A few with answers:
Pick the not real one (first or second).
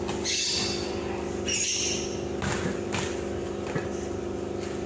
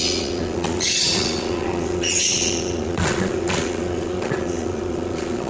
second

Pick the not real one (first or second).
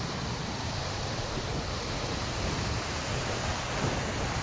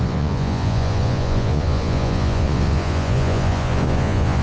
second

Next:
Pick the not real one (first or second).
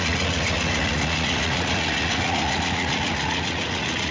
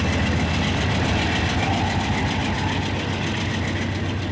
first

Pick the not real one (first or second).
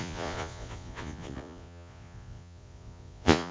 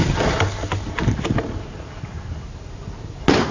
first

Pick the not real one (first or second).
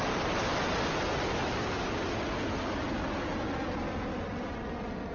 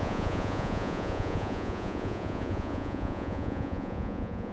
second